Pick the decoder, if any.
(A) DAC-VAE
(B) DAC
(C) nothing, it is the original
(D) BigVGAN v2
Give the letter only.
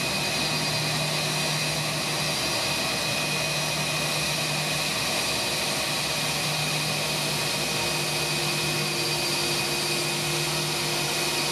C